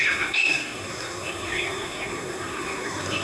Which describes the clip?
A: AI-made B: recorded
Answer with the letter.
A